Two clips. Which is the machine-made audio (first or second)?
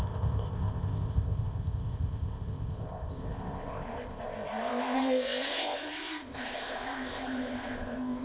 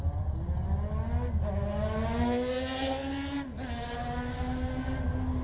first